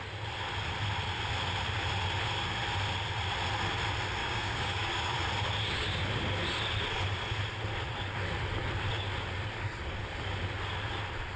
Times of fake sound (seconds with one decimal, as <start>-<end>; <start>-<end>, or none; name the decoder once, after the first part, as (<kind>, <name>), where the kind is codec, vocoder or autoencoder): 4.2-5.2 (codec, DAC)